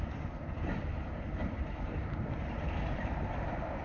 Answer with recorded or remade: remade